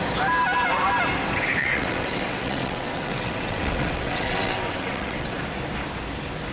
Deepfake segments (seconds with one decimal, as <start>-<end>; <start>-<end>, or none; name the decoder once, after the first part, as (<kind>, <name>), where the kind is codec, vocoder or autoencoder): 1.6-5.4 (vocoder, WaveNeXt)